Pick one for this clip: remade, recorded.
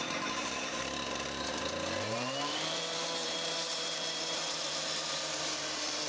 remade